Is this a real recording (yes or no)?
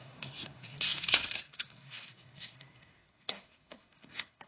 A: no